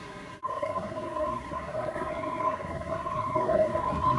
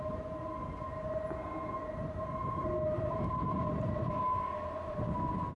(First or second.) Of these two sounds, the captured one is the second